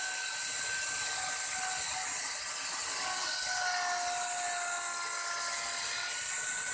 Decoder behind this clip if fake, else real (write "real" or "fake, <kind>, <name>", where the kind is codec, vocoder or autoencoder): real